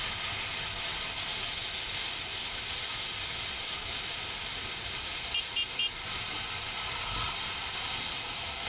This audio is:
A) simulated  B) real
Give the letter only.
B